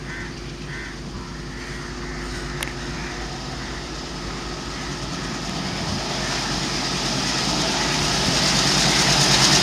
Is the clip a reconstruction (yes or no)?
no